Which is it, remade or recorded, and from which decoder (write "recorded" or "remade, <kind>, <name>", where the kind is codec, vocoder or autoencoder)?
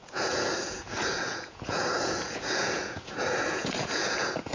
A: remade, vocoder, Vocos